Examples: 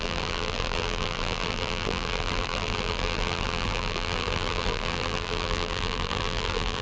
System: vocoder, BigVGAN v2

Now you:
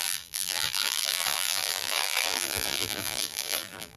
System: vocoder, BigVGAN v2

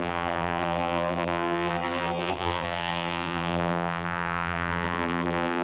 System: vocoder, BigVGAN v2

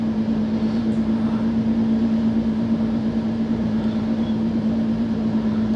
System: vocoder, BigVGAN v2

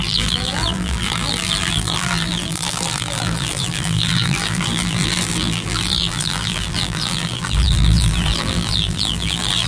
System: vocoder, BigVGAN v2